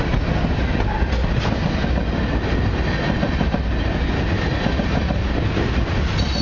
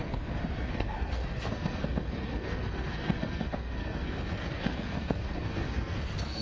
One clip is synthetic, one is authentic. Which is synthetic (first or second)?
second